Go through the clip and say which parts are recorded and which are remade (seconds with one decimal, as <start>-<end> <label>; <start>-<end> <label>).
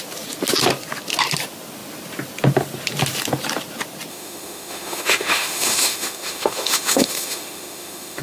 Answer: 0.0-4.1 recorded; 4.1-8.2 remade